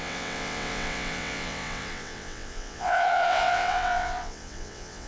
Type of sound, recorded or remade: remade